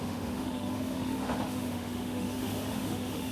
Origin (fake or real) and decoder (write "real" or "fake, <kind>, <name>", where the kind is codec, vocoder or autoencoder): fake, autoencoder, DAC-VAE